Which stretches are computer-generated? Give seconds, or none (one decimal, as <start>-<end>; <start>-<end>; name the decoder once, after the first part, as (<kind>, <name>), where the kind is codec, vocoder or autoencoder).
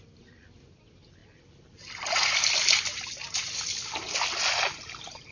none